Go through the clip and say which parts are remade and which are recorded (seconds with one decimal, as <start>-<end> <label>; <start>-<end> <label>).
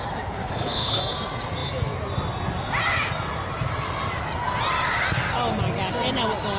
0.0-0.4 recorded; 0.4-1.0 remade; 1.0-6.6 recorded